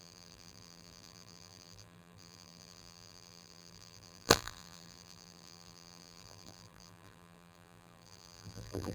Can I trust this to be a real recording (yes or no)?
no